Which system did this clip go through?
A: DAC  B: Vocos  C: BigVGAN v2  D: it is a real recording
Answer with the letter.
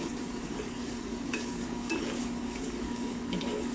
A